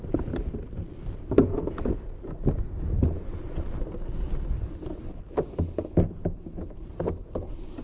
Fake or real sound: real